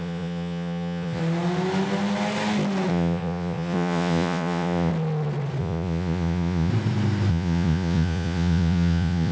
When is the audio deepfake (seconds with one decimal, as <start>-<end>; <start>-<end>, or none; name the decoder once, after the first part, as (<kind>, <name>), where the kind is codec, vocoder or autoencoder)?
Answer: 0.0-1.2 (vocoder, Vocos); 2.9-4.9; 5.6-6.7; 7.3-9.3